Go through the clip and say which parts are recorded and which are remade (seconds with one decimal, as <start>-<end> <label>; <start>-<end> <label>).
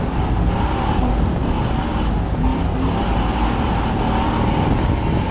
0.0-5.3 recorded